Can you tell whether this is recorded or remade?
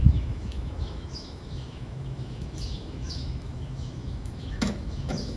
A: remade